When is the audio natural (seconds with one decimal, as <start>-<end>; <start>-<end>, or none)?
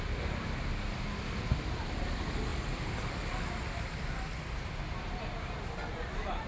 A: 0.0-6.5